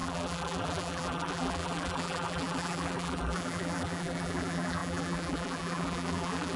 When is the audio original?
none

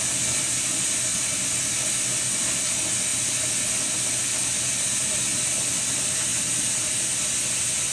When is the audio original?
0.0-1.1; 1.6-6.3; 6.9-7.9